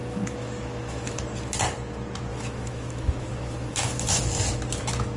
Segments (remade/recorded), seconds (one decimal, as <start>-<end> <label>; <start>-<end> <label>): 0.0-1.2 remade; 1.2-2.3 recorded; 2.3-4.2 remade; 4.2-5.2 recorded